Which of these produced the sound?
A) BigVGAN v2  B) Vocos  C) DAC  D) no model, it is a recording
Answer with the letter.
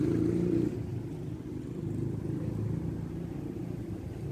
D